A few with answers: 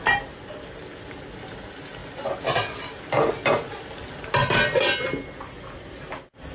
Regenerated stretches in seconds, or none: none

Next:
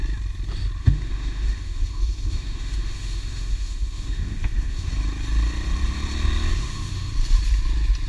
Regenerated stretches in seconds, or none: 0.8-4.9 (autoencoder, DAC-VAE); 6.6-7.1